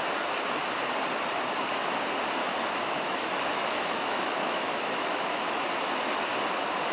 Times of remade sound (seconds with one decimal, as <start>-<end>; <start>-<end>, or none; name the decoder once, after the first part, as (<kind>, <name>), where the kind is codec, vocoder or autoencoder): 2.4-3.2 (autoencoder, DAC-VAE); 3.6-5.7